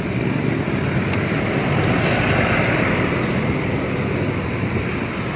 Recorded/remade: recorded